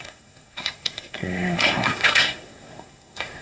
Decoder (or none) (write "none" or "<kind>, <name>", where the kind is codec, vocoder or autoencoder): codec, SNAC